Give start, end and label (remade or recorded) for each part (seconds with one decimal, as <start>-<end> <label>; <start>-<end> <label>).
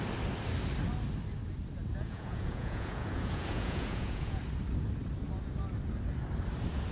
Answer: 0.0-1.9 recorded; 1.9-4.4 remade; 4.4-6.9 recorded